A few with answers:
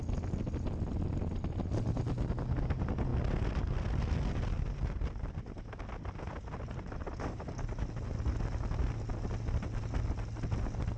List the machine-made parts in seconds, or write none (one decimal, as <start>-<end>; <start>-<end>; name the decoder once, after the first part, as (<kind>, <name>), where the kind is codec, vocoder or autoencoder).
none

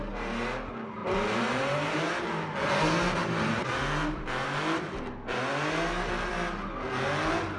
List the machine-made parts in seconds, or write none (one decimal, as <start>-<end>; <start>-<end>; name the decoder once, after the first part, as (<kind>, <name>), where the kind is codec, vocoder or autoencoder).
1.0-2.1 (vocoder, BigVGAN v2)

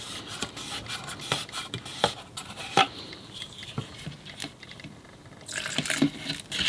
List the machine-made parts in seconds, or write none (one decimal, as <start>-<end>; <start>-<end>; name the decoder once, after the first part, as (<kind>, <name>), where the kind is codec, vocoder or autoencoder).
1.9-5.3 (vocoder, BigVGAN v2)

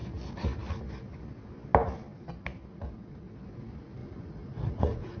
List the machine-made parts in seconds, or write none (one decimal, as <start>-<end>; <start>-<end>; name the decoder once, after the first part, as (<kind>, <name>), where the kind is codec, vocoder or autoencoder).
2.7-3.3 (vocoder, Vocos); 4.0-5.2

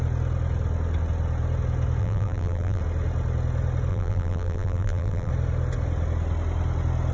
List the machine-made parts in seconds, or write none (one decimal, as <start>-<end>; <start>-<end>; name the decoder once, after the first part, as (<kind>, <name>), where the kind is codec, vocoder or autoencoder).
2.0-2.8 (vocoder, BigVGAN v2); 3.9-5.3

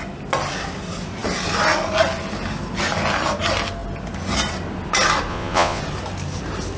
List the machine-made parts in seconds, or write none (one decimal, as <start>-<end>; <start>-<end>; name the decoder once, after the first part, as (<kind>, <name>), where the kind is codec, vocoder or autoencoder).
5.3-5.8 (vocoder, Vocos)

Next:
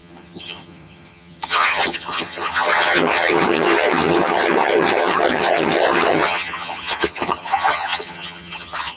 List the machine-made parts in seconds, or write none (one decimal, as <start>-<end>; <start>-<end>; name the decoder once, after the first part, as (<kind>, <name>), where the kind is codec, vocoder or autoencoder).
0.0-9.0 (vocoder, HiFi-GAN)